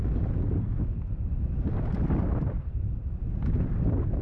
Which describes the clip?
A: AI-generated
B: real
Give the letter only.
B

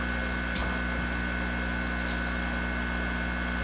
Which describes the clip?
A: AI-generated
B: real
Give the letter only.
B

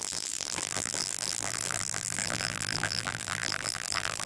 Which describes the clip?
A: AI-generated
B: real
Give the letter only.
A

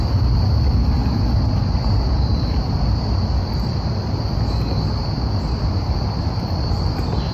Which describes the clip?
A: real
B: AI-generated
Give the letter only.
A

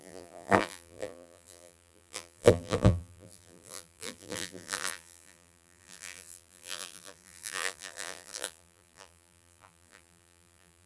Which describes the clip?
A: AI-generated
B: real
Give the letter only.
A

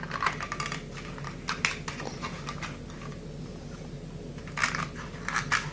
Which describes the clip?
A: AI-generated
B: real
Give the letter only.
B